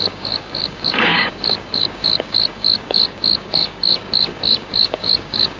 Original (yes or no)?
no